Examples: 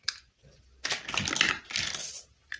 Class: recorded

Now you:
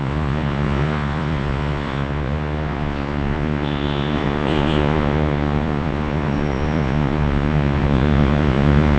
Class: remade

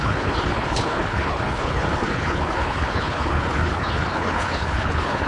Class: remade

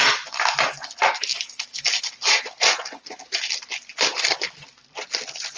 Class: recorded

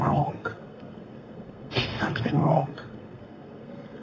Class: remade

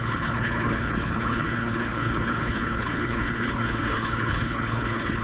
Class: remade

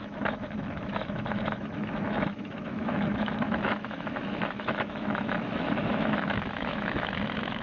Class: remade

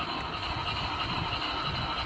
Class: recorded